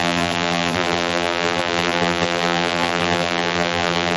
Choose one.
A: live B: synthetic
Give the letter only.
B